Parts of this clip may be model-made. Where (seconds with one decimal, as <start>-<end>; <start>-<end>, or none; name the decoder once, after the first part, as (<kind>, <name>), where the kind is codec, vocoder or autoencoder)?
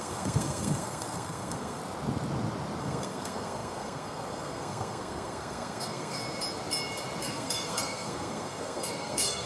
0.0-1.8 (codec, SNAC); 2.8-6.2; 7.2-9.5